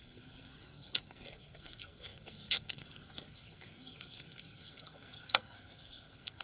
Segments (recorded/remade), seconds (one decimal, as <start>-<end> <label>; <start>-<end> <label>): 0.0-6.4 remade